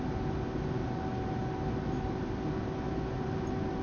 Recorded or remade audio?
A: recorded